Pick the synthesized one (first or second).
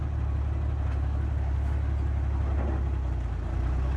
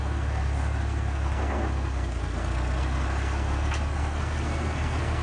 second